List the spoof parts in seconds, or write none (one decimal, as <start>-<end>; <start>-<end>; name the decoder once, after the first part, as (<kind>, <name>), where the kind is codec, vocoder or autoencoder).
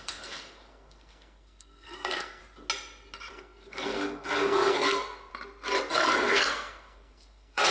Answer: 0.0-2.4 (codec, SNAC); 3.3-5.3; 5.9-7.7